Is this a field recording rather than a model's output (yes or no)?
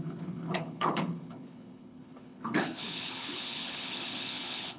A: no